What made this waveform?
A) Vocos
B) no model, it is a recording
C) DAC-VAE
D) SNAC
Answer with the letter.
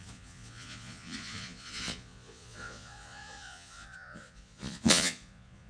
A